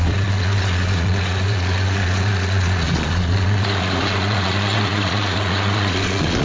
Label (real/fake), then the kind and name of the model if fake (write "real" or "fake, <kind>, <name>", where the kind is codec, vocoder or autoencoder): fake, vocoder, Vocos